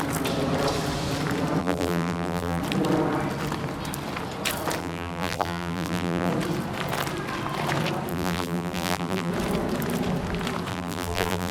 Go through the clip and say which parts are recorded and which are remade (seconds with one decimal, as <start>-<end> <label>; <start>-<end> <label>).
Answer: 0.0-1.6 recorded; 1.6-2.6 remade; 2.6-4.8 recorded; 4.8-6.3 remade; 6.3-8.1 recorded; 8.1-9.3 remade; 9.3-10.7 recorded; 10.7-11.5 remade